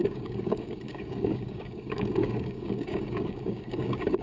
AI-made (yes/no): yes